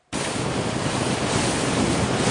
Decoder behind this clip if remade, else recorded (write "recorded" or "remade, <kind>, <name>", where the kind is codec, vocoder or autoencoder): recorded